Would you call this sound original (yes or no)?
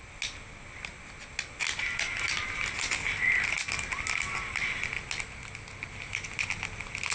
yes